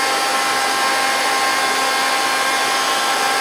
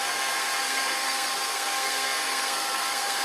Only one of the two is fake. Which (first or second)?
second